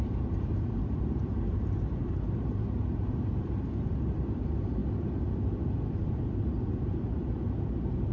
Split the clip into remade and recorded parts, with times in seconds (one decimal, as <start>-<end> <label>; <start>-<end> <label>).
0.0-4.8 remade; 4.8-5.9 recorded; 5.9-7.2 remade; 7.2-8.1 recorded